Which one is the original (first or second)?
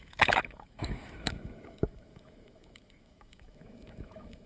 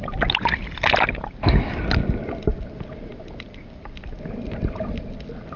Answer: second